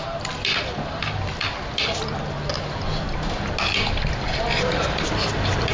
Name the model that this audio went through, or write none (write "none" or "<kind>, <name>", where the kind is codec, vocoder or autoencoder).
none